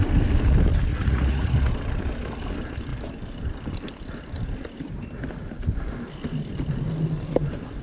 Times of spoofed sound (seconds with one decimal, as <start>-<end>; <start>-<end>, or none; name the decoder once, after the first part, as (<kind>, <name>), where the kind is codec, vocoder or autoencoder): 0.9-1.7 (vocoder, Vocos)